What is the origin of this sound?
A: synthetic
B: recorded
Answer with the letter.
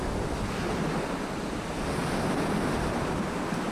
B